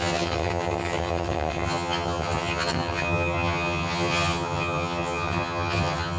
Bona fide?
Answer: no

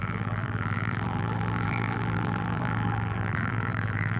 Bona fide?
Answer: no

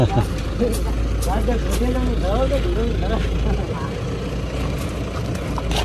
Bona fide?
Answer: yes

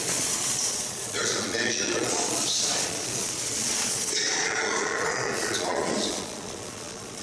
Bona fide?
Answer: no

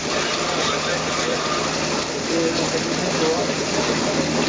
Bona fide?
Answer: yes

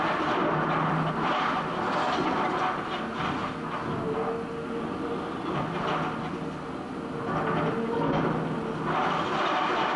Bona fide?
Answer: yes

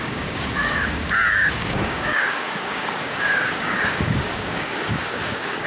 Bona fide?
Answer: no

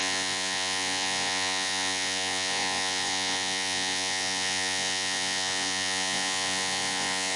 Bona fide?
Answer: no